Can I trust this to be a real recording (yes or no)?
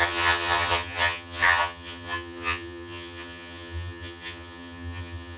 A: no